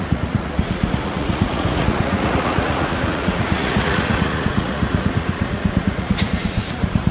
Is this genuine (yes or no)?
no